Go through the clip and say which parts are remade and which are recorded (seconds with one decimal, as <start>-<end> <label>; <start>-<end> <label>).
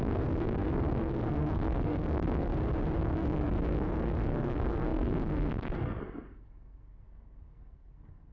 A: 0.0-2.5 remade; 2.5-3.0 recorded; 3.0-8.3 remade